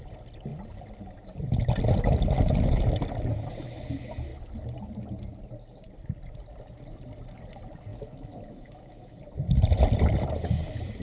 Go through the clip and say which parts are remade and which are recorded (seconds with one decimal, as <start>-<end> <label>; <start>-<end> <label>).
0.0-7.9 recorded; 7.9-9.2 remade; 9.2-11.0 recorded